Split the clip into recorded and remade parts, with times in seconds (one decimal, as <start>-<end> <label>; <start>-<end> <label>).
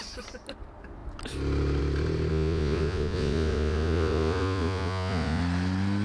0.0-2.3 recorded; 2.3-5.4 remade; 5.4-6.0 recorded